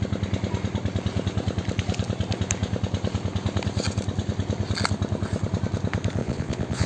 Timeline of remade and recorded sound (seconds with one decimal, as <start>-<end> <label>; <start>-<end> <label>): 0.0-6.2 recorded; 6.2-6.9 remade